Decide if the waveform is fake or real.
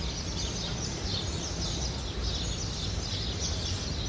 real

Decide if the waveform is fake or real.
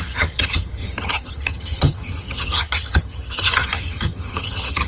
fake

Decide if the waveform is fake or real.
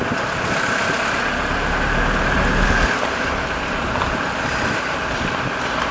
real